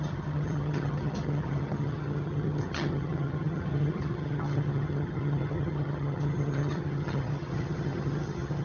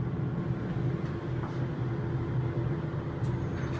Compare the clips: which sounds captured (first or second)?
second